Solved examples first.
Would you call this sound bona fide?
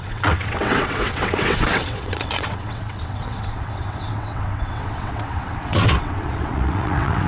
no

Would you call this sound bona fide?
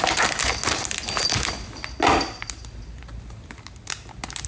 yes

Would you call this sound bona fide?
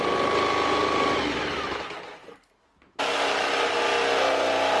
yes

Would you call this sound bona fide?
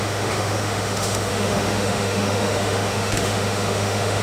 no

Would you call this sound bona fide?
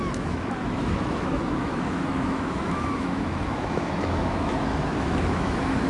no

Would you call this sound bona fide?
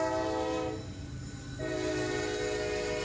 yes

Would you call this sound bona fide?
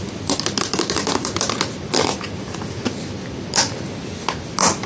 yes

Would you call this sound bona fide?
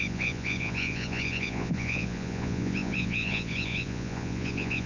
no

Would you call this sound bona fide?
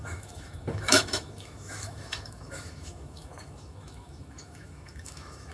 no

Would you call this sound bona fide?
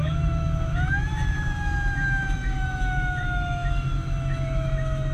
no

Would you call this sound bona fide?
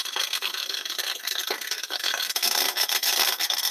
no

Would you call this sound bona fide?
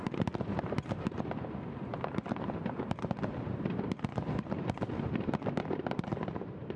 no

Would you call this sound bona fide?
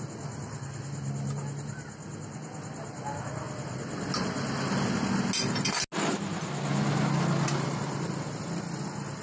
yes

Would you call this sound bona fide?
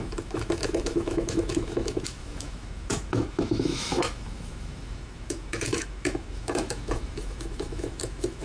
no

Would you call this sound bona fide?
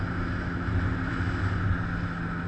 yes